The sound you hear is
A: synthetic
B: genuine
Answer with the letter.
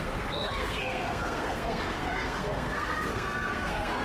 A